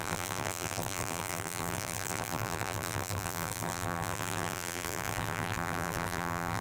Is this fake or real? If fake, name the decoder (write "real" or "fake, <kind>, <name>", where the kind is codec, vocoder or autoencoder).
fake, vocoder, BigVGAN v2